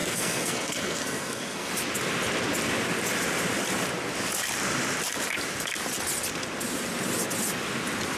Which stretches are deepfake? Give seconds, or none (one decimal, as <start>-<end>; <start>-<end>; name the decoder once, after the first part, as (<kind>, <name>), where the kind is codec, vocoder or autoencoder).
0.0-1.7 (codec, SNAC)